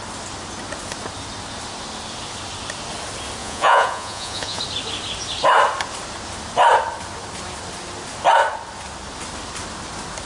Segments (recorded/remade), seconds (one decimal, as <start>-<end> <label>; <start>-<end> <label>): 0.0-3.4 recorded; 3.4-4.6 remade; 4.6-10.3 recorded